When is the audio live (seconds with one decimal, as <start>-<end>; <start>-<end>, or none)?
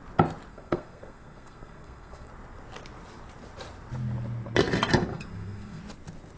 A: 0.0-0.5; 2.3-5.1; 5.8-6.4